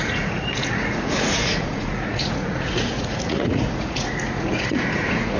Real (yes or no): no